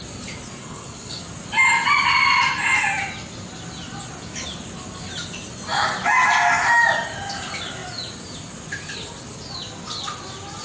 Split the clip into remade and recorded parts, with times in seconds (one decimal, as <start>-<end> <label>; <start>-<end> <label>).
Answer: 0.0-0.6 recorded; 0.6-1.2 remade; 1.2-10.6 recorded